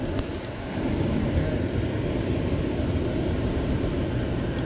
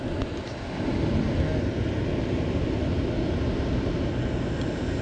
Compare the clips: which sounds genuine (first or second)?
second